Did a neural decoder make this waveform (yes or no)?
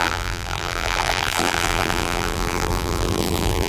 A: yes